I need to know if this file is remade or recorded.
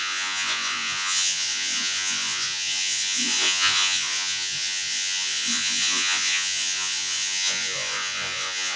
remade